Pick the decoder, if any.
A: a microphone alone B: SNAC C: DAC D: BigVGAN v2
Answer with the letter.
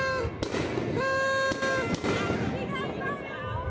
A